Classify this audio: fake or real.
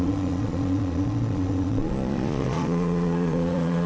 fake